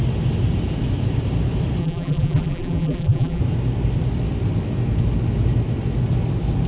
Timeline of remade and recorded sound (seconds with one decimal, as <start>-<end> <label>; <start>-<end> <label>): 0.0-1.8 recorded; 1.8-3.4 remade; 3.4-6.7 recorded